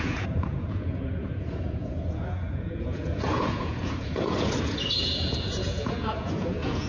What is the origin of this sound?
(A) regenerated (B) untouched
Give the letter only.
A